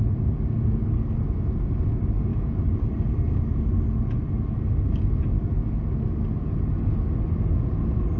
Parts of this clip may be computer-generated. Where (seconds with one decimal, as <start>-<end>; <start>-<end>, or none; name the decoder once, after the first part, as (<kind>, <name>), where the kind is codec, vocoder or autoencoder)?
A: 2.3-4.3 (vocoder, BigVGAN v2)